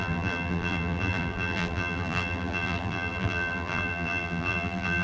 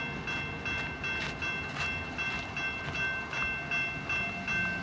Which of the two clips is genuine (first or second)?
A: second